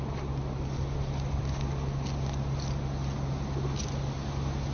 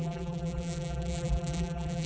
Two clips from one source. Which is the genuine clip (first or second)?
first